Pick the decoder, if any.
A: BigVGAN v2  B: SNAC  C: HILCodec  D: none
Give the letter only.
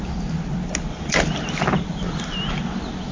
D